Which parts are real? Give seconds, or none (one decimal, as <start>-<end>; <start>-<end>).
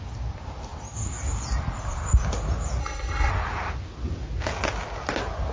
0.0-2.8; 3.3-5.5